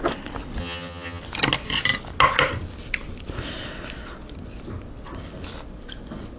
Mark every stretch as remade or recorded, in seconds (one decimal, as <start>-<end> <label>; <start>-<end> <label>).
0.0-0.6 recorded; 0.6-1.2 remade; 1.2-6.4 recorded